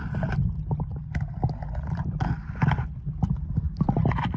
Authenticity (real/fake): real